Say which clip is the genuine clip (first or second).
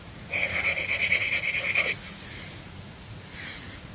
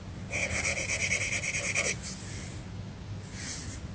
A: second